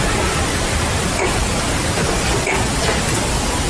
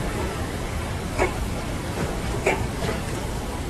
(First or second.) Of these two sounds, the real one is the first